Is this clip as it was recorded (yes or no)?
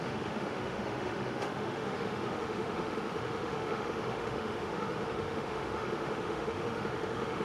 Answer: no